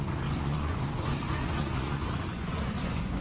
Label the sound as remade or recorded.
remade